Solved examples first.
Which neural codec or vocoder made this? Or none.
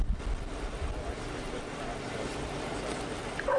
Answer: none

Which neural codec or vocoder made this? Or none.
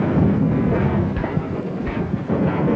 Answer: codec, SNAC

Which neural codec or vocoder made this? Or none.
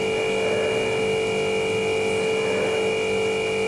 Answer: none